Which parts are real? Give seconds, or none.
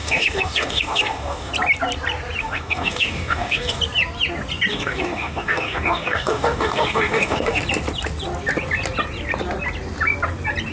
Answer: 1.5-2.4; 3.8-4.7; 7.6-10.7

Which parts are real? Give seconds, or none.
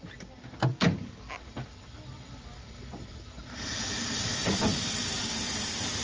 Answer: 0.0-0.7; 1.3-6.0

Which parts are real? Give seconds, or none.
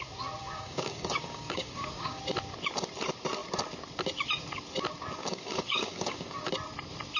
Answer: 0.0-0.4; 2.2-5.2; 6.5-7.2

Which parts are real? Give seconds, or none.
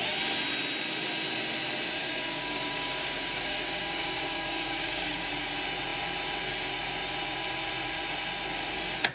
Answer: 0.0-2.0; 5.3-9.1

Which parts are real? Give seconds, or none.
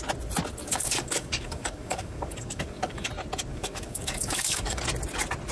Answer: 0.0-0.6; 3.1-3.5; 4.8-5.5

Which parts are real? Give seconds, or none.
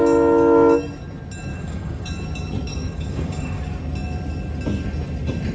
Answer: 0.0-1.5; 2.1-2.7; 3.6-5.5